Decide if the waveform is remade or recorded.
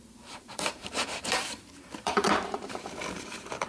remade